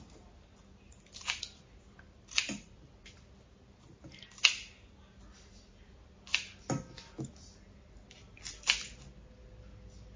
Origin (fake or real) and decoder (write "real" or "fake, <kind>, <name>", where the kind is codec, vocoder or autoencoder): real